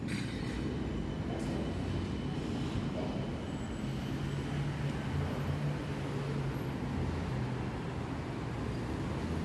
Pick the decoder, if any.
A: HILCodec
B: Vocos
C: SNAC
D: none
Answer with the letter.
D